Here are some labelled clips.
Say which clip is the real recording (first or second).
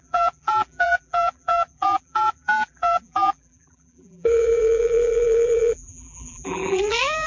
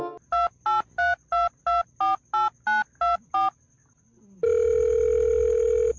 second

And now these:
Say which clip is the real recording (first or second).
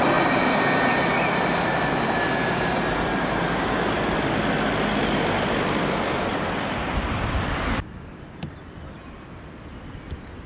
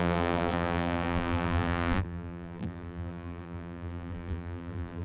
first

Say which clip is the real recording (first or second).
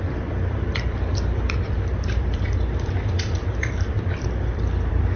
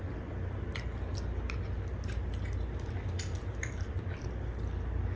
second